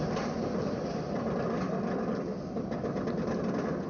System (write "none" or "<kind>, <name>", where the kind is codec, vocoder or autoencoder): none